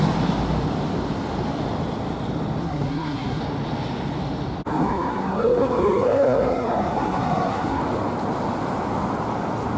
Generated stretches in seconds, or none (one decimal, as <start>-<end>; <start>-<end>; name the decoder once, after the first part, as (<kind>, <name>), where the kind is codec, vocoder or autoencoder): 2.6-3.4 (codec, SNAC); 4.7-7.8